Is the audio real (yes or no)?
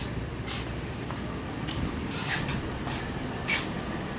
yes